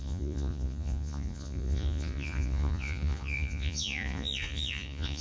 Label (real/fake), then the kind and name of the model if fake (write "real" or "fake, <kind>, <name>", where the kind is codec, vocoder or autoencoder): fake, vocoder, Vocos